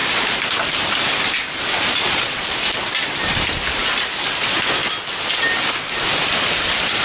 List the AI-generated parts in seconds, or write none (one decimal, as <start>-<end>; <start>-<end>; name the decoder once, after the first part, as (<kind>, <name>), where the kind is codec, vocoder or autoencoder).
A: 0.0-4.8 (vocoder, BigVGAN v2); 6.1-7.0